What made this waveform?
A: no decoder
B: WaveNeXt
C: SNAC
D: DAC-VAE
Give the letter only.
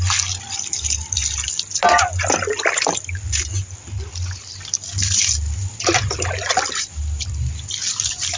A